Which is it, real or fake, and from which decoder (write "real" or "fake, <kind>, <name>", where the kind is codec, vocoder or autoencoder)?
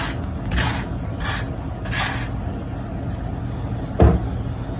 real